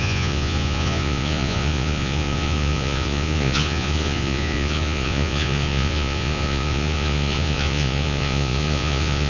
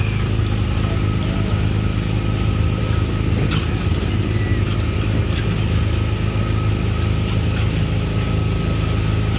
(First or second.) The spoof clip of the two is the first